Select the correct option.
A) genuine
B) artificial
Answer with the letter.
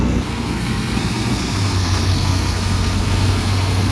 B